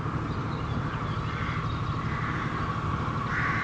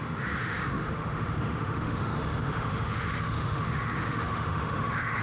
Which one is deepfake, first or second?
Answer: second